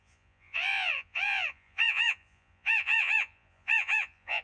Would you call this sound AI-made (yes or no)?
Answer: yes